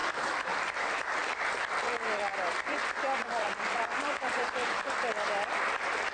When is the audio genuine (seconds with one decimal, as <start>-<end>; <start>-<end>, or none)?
0.5-2.3; 5.1-6.1